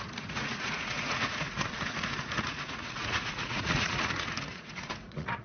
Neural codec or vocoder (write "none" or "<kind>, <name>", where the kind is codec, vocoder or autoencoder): vocoder, Vocos